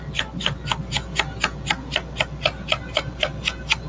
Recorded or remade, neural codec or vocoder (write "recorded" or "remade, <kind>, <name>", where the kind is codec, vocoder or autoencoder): recorded